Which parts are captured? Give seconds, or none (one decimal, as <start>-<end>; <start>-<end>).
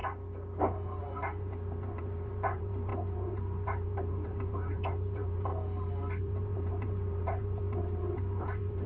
0.0-1.0; 5.5-6.2